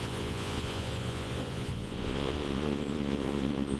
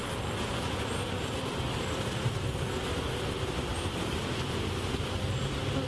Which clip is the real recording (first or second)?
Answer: second